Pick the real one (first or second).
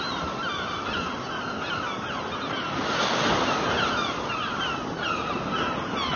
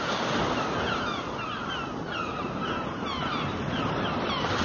second